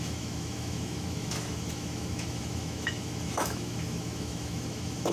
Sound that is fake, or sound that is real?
fake